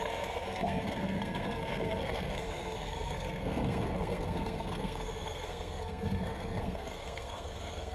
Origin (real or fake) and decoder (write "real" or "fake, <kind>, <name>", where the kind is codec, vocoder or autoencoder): fake, codec, SNAC